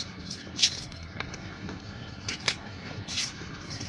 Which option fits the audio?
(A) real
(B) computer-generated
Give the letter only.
B